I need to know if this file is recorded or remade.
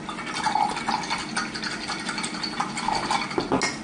recorded